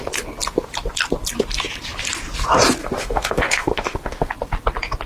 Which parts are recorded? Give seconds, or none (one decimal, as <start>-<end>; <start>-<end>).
0.0-2.8; 4.3-5.1